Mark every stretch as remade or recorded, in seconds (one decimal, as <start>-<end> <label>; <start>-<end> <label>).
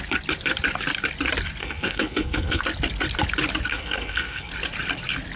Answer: 0.0-1.6 recorded; 1.6-2.6 remade; 2.6-3.7 recorded; 3.7-4.5 remade; 4.5-5.4 recorded